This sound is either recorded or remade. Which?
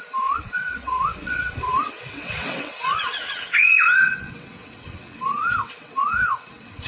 remade